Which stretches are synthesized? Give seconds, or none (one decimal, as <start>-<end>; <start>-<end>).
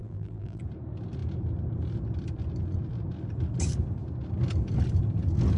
0.0-0.6